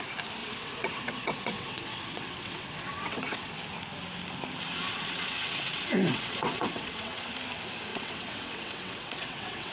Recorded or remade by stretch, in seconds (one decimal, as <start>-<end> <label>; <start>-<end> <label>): 0.0-0.4 recorded; 0.4-3.5 remade; 3.5-4.7 recorded; 4.7-7.2 remade; 7.2-7.9 recorded; 7.9-9.7 remade